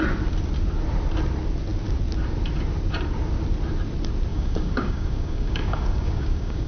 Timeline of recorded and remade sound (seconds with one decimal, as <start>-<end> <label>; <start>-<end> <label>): 0.0-4.3 recorded; 4.3-6.7 remade